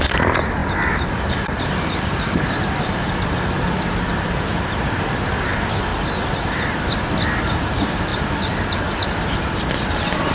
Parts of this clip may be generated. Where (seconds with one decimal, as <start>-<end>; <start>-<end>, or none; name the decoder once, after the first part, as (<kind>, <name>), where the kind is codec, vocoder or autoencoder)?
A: 0.0-0.6 (vocoder, BigVGAN v2); 4.1-8.1; 9.4-10.3